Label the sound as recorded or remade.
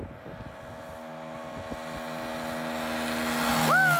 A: recorded